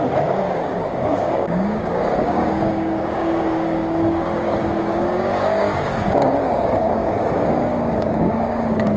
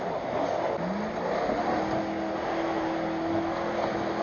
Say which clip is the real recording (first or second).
second